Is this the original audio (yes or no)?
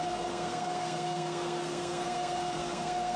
no